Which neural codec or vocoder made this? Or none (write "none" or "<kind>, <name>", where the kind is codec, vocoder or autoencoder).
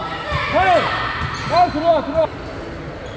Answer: none